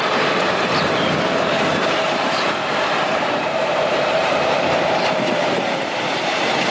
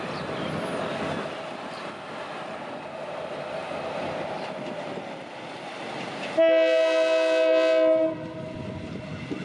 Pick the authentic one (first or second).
second